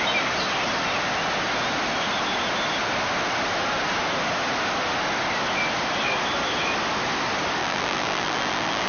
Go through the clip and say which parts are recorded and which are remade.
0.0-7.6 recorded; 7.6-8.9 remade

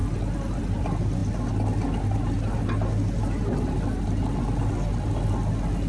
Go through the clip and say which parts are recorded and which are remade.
0.0-5.9 recorded

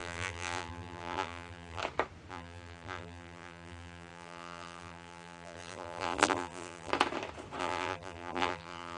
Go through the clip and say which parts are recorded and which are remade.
0.0-1.8 remade; 1.8-2.3 recorded; 2.3-6.9 remade; 6.9-7.6 recorded; 7.6-9.0 remade

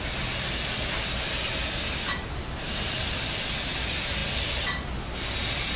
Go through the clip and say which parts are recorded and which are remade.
0.0-5.8 recorded

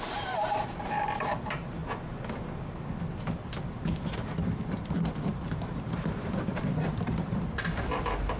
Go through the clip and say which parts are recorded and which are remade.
0.0-1.8 remade; 1.8-3.0 recorded; 3.0-8.4 remade

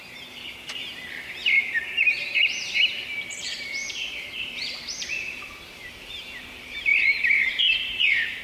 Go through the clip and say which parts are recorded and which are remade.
0.0-8.4 remade